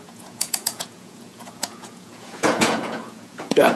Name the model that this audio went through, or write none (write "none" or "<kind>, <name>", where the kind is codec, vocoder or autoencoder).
vocoder, Vocos